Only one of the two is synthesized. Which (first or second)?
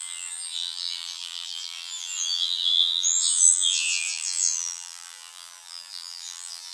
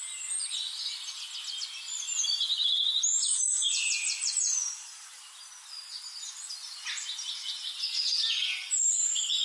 first